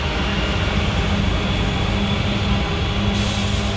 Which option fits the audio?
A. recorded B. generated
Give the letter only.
A